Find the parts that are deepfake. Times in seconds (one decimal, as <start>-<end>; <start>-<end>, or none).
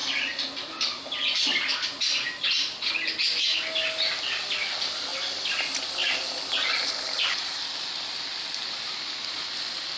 0.0-0.7; 5.1-7.9